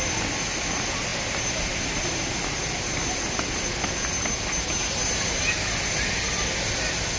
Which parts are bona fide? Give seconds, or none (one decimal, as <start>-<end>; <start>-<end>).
0.0-7.2